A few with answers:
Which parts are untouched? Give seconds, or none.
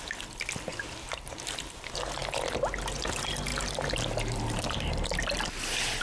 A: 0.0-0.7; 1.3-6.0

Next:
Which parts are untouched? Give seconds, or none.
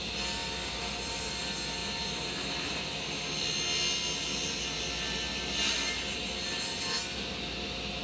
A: 0.0-8.0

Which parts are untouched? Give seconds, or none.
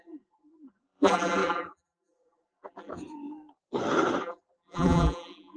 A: 2.9-4.2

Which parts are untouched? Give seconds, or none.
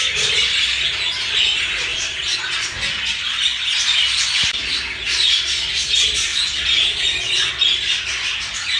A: 0.0-1.9; 2.4-6.3; 7.5-8.8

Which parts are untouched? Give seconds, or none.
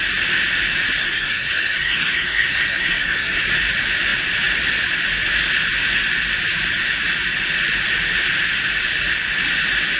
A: 0.0-1.0; 3.4-10.0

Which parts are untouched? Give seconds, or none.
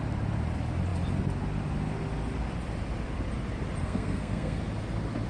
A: 0.0-3.8; 4.6-5.3